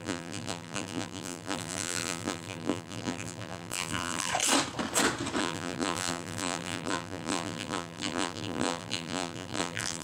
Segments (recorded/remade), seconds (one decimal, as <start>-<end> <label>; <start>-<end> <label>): 0.0-4.3 remade; 4.3-5.4 recorded; 5.4-10.0 remade